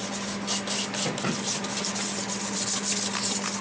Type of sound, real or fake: real